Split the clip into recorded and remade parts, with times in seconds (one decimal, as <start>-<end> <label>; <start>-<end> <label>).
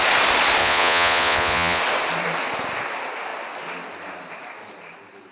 0.0-0.6 recorded; 0.6-1.8 remade; 1.8-5.3 recorded